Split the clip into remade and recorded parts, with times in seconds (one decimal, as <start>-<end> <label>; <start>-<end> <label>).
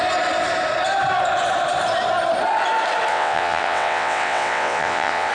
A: 0.0-3.1 recorded; 3.1-5.3 remade